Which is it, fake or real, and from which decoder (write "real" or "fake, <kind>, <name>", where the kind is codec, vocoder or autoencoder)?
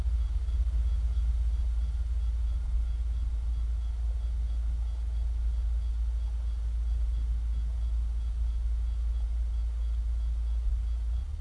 real